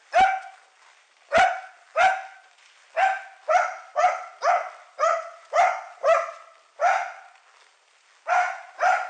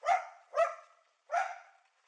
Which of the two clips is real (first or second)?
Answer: first